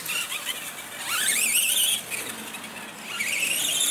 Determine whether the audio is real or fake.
real